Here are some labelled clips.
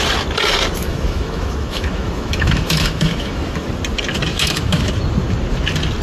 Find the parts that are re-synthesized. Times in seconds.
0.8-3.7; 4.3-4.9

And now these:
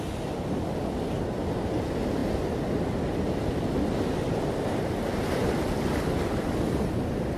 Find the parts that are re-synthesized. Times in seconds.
5.4-7.4

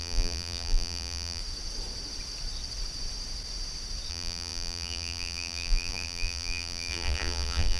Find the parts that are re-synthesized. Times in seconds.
0.0-1.4; 4.1-7.8

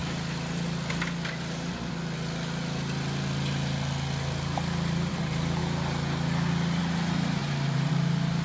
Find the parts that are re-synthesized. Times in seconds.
7.4-7.9

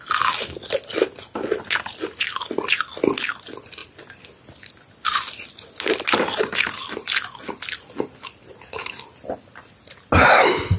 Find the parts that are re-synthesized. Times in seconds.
none

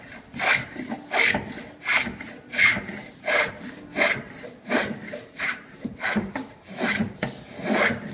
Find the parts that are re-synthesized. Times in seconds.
2.7-3.5; 4.8-7.0

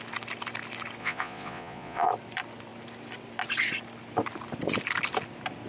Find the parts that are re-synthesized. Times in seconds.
1.0-2.1